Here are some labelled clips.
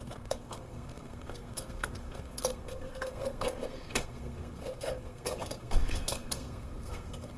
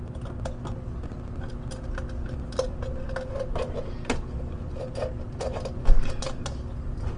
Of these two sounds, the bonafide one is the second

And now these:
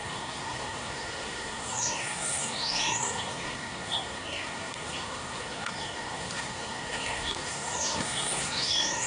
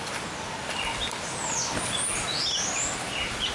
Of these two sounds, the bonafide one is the second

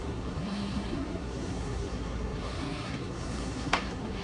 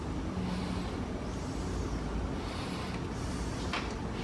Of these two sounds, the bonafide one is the second